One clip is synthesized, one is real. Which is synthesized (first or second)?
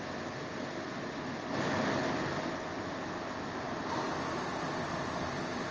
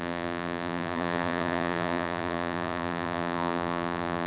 second